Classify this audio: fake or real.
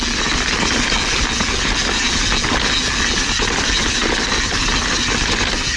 real